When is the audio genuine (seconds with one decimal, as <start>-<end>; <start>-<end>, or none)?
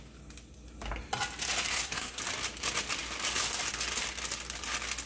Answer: 0.0-1.7; 2.2-5.1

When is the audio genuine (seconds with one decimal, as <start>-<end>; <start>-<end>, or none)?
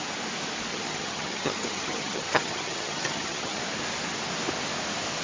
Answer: 0.0-0.7; 3.6-5.2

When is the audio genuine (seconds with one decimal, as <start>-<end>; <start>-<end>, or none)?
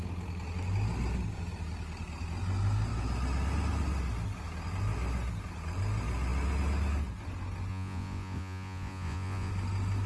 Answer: 0.0-7.7; 9.5-10.1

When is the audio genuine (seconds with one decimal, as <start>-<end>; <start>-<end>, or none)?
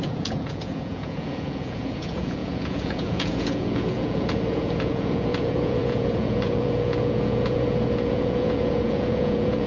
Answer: none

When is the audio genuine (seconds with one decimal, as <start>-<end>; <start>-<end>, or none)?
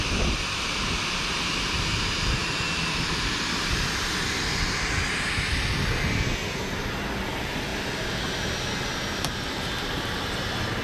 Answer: 2.4-7.3; 7.7-8.9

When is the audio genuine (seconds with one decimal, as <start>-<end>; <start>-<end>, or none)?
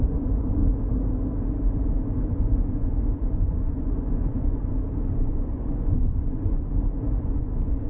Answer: 0.6-2.3; 4.6-5.1; 6.7-7.2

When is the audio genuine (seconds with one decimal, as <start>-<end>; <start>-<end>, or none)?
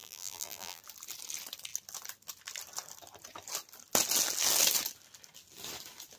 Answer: 0.8-6.2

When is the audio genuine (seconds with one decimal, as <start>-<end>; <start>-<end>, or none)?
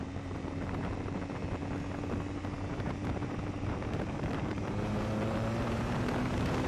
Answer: 1.6-2.3